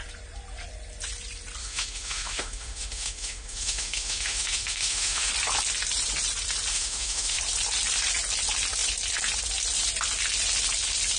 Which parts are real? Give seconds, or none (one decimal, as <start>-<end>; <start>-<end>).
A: 0.0-1.6; 5.3-6.7; 7.4-11.2